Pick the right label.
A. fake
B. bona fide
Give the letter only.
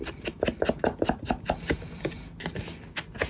B